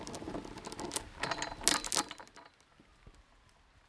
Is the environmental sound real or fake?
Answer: real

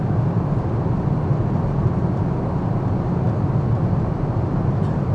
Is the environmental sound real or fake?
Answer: real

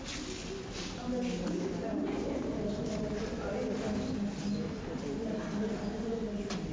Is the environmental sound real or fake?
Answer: real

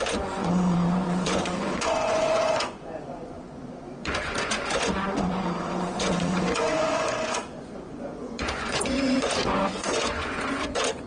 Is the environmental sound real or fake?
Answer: fake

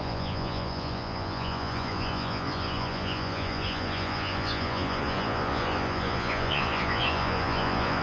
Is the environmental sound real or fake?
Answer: fake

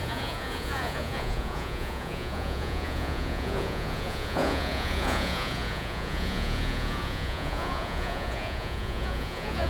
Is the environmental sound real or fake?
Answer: fake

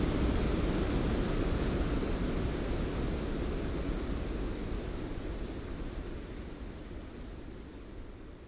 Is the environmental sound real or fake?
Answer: real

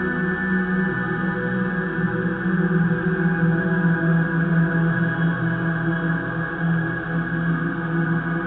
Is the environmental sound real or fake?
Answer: real